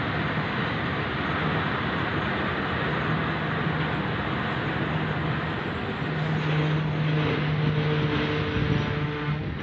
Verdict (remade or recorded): recorded